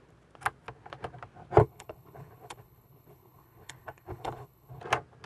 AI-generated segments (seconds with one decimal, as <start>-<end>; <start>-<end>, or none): 1.6-4.8